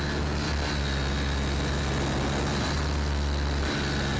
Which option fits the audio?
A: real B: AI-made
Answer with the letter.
A